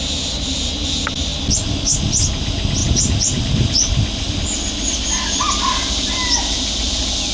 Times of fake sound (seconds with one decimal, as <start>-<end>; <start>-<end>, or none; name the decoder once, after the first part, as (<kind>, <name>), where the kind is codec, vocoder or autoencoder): 2.8-4.3 (vocoder, BigVGAN v2)